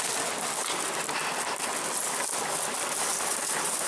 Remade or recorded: recorded